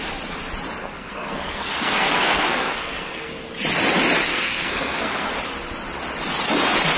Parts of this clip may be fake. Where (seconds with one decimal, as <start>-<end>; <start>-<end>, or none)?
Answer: 0.8-3.3; 4.3-5.3